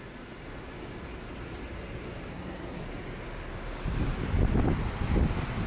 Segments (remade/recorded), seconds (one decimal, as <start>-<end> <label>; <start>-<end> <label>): 0.0-2.3 recorded; 2.3-2.8 remade; 2.8-5.7 recorded